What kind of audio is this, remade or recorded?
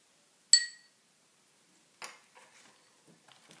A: recorded